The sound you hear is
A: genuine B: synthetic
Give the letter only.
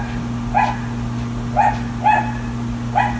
A